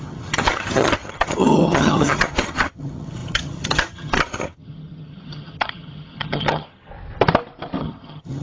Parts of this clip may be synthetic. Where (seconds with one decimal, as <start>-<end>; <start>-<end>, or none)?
0.0-6.9; 7.8-8.4